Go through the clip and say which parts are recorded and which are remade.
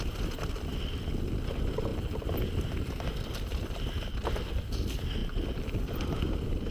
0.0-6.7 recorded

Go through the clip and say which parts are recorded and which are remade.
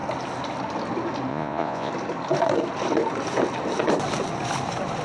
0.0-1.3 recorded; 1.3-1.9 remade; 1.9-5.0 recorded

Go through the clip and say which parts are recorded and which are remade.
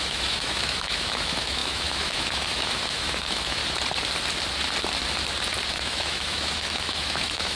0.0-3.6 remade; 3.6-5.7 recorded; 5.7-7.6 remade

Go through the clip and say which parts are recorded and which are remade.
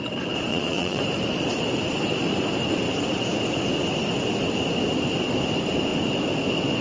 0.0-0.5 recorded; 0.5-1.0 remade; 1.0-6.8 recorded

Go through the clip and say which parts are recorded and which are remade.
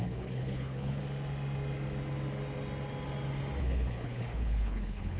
0.0-1.0 remade; 1.0-3.6 recorded; 3.6-5.2 remade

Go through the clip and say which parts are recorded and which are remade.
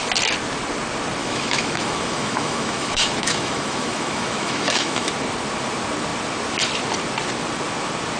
0.0-1.2 recorded; 1.2-5.1 remade; 5.1-8.2 recorded